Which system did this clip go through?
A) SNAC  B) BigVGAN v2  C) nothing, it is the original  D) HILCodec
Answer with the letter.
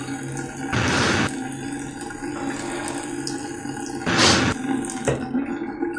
C